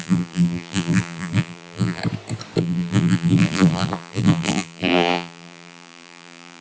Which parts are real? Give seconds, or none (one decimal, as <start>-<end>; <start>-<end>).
2.0-2.6